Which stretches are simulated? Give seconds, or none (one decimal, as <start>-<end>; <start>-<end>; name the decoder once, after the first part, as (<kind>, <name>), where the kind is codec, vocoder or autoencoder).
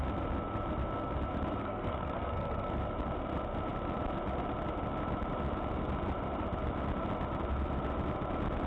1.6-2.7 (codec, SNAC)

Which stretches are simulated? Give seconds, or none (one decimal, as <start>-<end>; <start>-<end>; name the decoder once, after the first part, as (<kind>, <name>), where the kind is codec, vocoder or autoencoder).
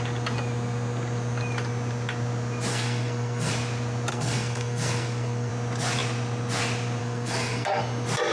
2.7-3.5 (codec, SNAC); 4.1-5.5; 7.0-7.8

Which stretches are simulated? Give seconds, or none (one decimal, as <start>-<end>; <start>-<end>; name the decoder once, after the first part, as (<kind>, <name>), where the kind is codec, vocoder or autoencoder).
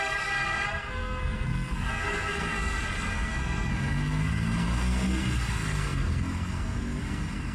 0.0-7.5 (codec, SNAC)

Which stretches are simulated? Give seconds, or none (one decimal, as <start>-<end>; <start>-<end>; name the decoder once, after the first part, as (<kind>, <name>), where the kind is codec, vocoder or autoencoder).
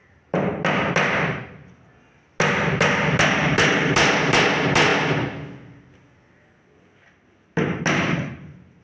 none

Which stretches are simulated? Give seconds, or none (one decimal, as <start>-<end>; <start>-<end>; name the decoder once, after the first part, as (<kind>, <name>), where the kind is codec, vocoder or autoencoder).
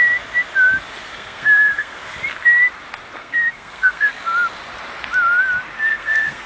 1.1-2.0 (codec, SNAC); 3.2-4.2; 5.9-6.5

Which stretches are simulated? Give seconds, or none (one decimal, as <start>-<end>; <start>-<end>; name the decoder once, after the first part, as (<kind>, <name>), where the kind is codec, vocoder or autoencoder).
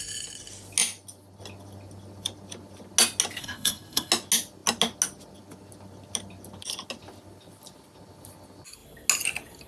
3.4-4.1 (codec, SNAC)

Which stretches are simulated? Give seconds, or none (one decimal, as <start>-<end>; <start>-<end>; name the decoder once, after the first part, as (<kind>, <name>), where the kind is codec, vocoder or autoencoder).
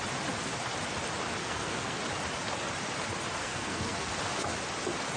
1.4-2.0 (codec, SNAC); 3.4-4.1